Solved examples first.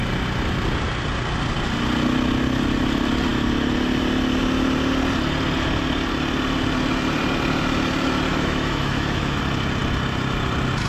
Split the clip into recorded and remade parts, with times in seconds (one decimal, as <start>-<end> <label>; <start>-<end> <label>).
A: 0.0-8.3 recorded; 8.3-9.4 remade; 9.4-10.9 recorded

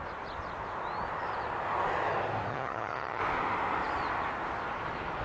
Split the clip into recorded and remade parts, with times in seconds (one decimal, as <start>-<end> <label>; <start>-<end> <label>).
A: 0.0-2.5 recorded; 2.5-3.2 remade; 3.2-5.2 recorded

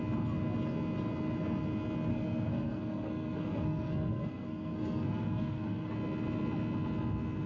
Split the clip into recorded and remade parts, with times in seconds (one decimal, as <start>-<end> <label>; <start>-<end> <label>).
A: 0.0-2.1 recorded; 2.1-5.9 remade; 5.9-7.5 recorded

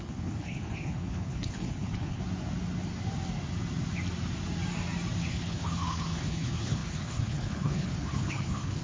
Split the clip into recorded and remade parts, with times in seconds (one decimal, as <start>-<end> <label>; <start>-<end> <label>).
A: 0.0-2.2 remade; 2.2-5.3 recorded; 5.3-8.8 remade